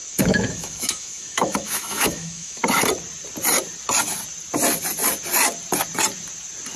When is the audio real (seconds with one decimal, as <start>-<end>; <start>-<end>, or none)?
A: 2.6-6.8

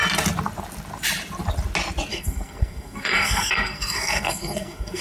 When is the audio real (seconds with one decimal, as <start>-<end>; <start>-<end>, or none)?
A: 0.0-2.1

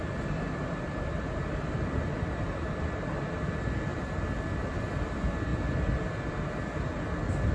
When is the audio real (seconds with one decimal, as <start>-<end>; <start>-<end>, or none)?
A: 0.0-7.5

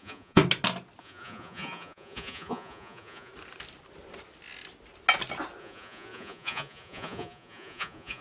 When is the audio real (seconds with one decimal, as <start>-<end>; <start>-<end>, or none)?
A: 0.4-1.0; 3.3-5.6